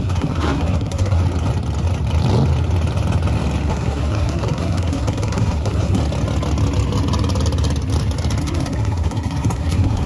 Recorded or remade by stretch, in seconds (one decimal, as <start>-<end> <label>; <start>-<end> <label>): 0.0-1.2 remade; 1.2-3.7 recorded; 3.7-6.0 remade; 6.0-8.4 recorded; 8.4-10.1 remade